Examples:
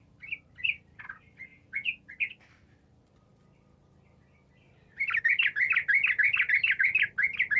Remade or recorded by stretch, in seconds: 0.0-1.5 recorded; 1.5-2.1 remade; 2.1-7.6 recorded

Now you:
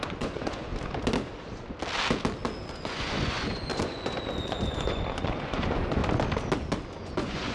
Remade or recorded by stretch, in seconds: 0.0-0.7 remade; 0.7-2.7 recorded; 2.7-6.0 remade; 6.0-7.0 recorded; 7.0-7.5 remade

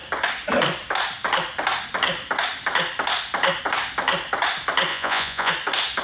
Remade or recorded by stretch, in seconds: 0.0-4.9 recorded; 4.9-5.5 remade; 5.5-6.0 recorded